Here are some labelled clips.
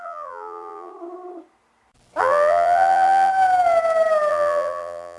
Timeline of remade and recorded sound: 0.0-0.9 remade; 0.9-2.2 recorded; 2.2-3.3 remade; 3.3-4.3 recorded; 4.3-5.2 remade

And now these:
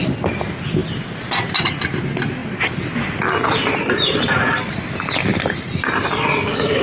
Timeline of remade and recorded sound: 0.0-5.3 recorded; 5.3-6.0 remade; 6.0-6.8 recorded

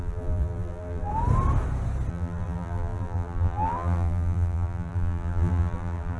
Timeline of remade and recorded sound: 0.0-1.1 remade; 1.1-2.1 recorded; 2.1-6.2 remade

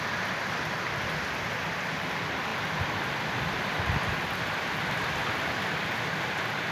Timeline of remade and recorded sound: 0.0-2.5 recorded; 2.5-6.7 remade

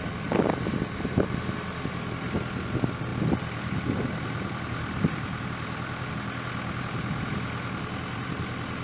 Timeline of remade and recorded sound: 0.0-3.1 recorded; 3.1-6.1 remade; 6.1-8.8 recorded

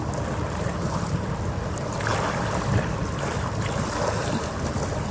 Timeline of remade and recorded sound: 0.0-5.1 recorded

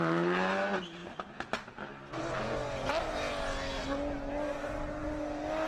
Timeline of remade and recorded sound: 0.0-5.7 recorded

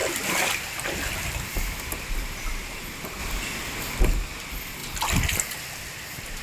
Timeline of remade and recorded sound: 0.0-2.8 remade; 2.8-6.4 recorded